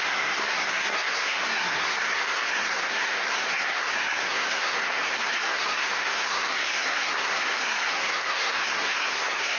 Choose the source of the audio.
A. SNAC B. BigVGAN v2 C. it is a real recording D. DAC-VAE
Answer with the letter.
A